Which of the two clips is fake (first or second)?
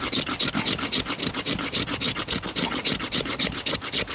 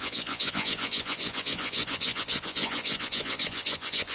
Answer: second